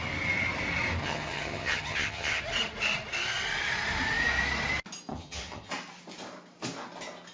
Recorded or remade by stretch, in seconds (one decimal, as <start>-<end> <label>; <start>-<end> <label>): 0.0-1.0 recorded; 1.0-2.4 remade; 2.4-5.1 recorded; 5.1-5.7 remade; 5.7-7.3 recorded